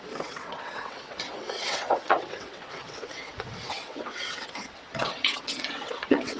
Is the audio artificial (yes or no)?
yes